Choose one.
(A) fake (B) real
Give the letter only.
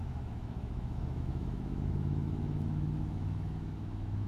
A